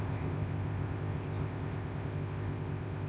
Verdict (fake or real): fake